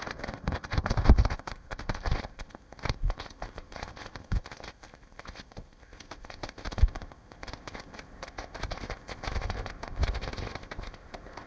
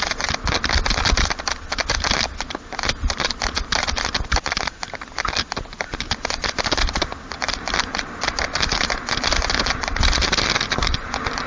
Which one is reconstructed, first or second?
first